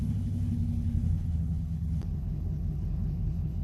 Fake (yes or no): yes